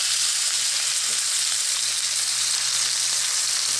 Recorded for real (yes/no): yes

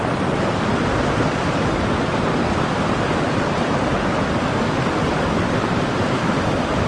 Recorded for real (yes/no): yes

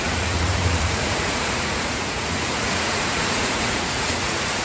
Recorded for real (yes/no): no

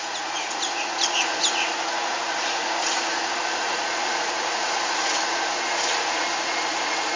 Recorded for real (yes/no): no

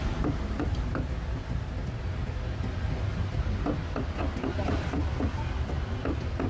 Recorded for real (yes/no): yes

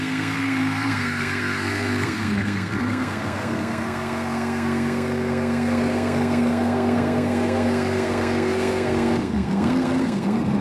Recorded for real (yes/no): no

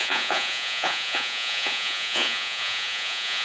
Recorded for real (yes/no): no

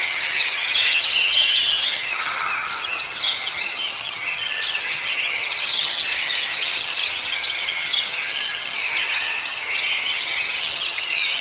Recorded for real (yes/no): no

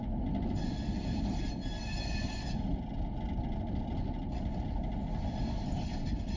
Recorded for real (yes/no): yes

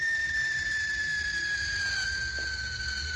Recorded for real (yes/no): yes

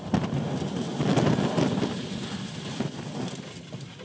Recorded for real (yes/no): yes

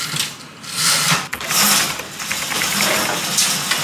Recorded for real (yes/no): yes